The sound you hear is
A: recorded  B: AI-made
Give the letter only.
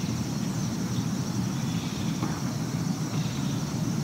A